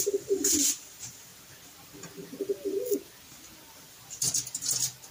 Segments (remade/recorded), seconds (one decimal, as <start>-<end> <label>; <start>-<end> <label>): 0.0-5.1 recorded